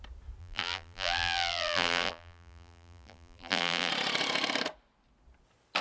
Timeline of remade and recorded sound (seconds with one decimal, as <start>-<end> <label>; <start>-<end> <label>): 0.0-0.4 recorded; 0.4-3.9 remade; 3.9-5.8 recorded